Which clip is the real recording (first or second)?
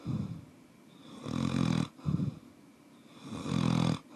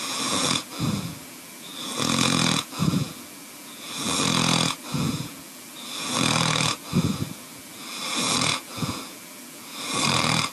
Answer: first